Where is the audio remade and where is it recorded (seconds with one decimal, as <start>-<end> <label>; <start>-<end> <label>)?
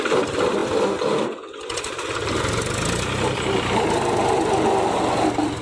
0.0-5.6 recorded